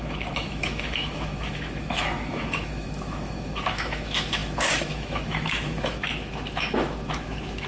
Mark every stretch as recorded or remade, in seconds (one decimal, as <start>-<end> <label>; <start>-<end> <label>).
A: 0.0-7.7 remade